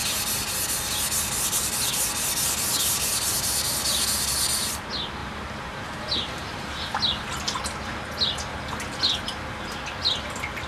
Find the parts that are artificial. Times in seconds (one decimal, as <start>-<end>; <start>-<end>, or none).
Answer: 5.2-6.7